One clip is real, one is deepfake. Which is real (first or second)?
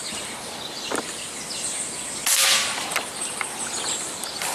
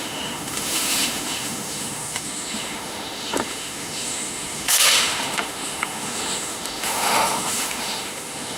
first